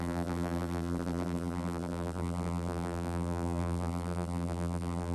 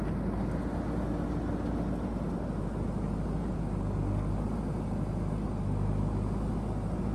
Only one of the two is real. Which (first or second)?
second